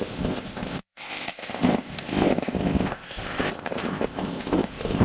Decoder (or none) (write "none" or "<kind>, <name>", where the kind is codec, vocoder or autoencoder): codec, ZipCodec